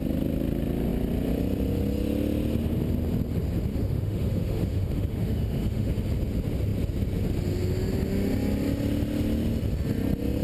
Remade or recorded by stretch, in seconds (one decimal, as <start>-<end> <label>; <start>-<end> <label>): 0.0-3.7 recorded; 3.7-5.9 remade; 5.9-10.4 recorded